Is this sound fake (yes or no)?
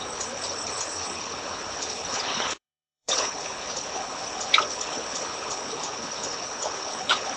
yes